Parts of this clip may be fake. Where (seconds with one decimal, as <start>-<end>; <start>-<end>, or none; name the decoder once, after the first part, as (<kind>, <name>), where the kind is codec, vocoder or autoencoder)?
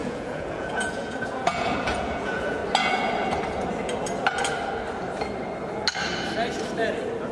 0.0-2.6 (vocoder, Vocos)